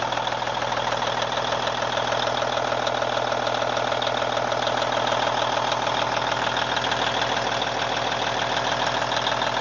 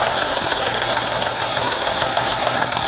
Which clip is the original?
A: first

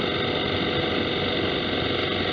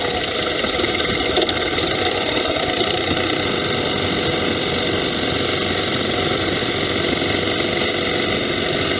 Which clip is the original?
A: first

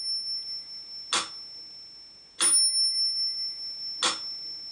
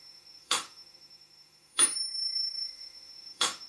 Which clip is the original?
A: first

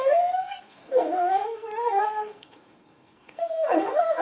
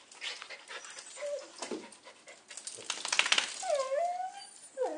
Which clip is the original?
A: second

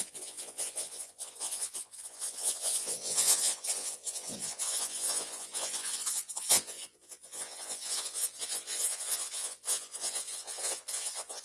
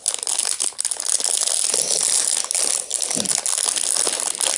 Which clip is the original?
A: second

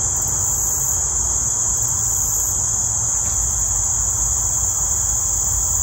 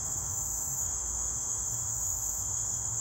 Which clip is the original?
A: first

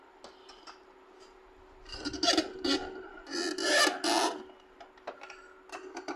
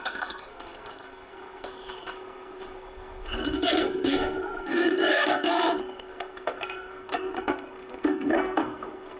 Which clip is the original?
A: first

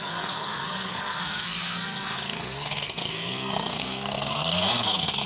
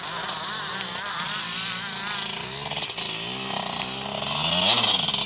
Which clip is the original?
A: second